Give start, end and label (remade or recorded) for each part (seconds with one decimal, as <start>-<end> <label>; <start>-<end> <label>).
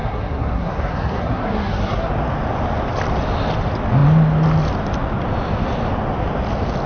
0.0-2.1 remade; 2.1-6.9 recorded